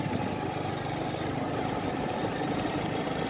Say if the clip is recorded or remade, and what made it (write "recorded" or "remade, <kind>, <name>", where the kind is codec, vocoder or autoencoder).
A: recorded